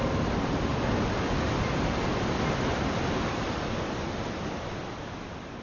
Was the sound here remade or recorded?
recorded